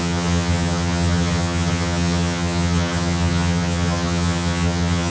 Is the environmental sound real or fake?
fake